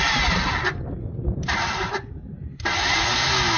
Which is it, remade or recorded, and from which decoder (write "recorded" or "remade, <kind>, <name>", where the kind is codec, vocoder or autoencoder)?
recorded